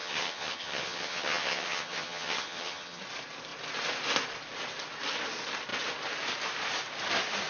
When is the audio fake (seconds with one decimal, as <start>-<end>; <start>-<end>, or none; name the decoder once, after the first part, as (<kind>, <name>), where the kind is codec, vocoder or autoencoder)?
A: 0.0-3.0 (vocoder, HiFi-GAN)